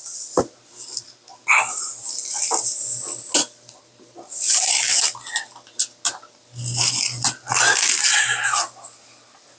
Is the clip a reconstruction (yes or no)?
no